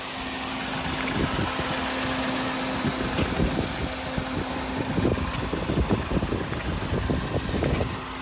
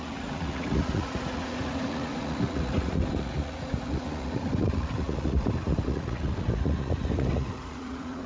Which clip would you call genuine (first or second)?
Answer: first